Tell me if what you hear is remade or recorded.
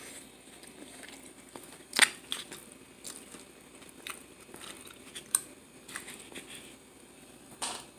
recorded